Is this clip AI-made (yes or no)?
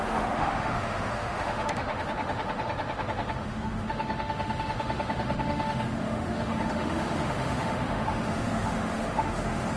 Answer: yes